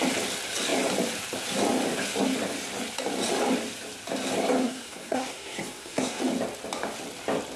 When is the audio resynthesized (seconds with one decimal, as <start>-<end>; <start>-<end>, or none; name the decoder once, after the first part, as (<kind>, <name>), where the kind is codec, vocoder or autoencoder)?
4.6-6.2 (codec, SNAC)